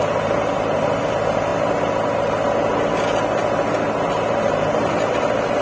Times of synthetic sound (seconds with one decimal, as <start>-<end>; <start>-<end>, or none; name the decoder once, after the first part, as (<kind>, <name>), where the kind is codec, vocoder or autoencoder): none